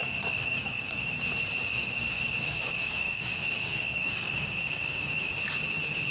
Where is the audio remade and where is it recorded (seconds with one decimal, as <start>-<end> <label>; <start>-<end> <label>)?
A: 0.0-1.1 remade; 1.1-1.6 recorded; 1.6-5.3 remade; 5.3-6.1 recorded